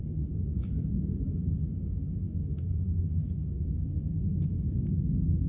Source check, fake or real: fake